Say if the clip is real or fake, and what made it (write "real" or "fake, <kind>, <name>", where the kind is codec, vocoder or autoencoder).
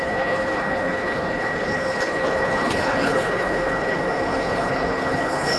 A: fake, codec, HILCodec